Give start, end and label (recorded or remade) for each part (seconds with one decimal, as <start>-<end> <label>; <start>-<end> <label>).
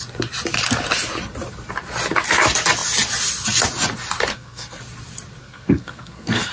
0.0-4.3 recorded; 4.3-4.8 remade; 4.8-5.4 recorded; 5.4-6.5 remade